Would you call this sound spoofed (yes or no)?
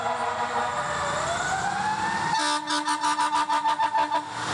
no